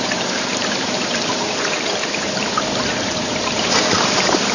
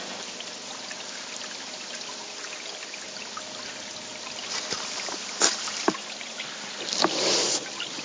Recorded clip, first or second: second